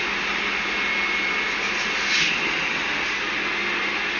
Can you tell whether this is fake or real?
real